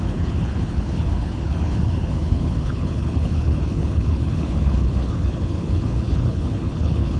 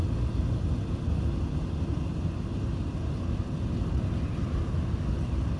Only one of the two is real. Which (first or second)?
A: second